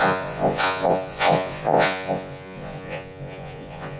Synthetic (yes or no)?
yes